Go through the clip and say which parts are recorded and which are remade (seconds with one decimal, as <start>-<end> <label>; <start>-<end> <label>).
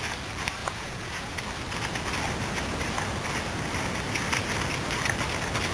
0.0-0.6 recorded; 0.6-1.4 remade; 1.4-5.7 recorded